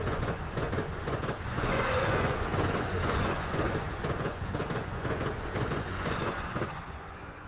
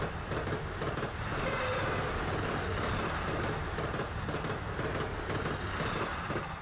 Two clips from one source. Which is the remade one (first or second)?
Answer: first